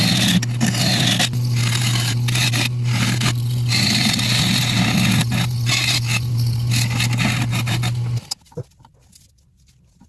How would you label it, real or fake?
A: real